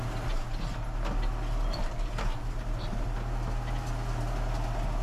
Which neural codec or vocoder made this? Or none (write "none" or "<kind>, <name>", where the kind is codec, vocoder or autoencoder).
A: none